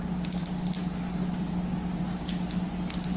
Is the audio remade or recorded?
recorded